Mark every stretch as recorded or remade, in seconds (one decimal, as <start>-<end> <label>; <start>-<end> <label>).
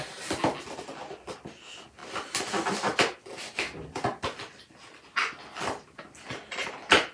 0.0-7.1 recorded